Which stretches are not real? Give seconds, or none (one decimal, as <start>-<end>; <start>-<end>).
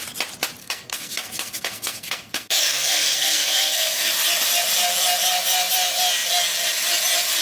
0.6-4.1